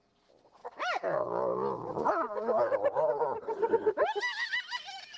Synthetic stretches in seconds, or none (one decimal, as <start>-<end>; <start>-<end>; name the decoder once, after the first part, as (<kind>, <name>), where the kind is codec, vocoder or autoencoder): none